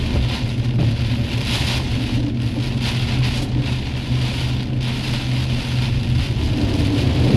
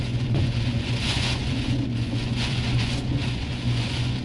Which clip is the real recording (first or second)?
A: first